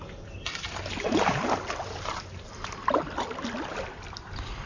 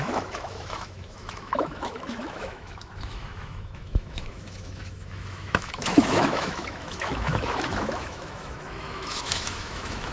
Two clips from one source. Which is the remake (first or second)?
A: second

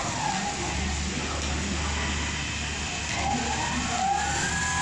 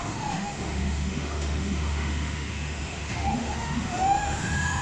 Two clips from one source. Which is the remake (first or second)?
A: second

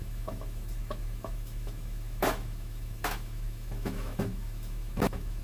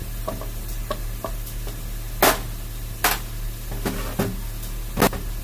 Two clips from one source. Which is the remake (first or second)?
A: first